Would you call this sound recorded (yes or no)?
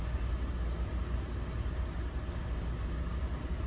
yes